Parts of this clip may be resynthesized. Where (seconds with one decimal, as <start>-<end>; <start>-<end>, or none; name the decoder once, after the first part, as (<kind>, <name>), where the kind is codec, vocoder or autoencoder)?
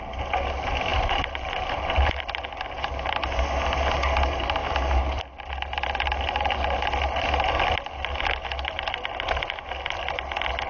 0.9-2.2 (vocoder, BigVGAN v2)